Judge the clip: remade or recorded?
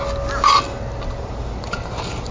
recorded